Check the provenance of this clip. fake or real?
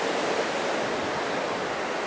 real